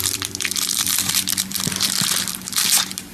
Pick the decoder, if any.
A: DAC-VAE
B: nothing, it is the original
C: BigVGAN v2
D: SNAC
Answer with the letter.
C